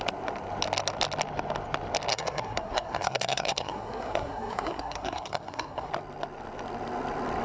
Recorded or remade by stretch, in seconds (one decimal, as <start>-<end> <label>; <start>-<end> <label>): 0.0-2.1 recorded; 2.1-5.9 remade; 5.9-7.4 recorded